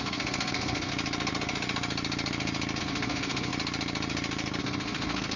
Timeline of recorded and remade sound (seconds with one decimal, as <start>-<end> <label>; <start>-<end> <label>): 0.0-0.9 remade; 0.9-2.8 recorded; 2.8-3.5 remade; 3.5-4.6 recorded; 4.6-5.4 remade